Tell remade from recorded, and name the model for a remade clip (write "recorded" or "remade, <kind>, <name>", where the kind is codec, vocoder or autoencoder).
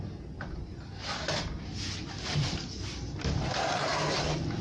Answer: recorded